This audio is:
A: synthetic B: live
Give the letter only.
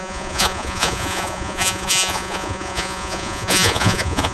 A